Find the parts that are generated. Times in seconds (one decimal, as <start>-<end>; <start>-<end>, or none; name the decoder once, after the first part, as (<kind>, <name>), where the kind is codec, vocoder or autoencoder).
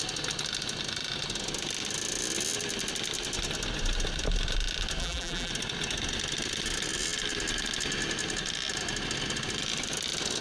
5.0-5.5 (vocoder, BigVGAN v2)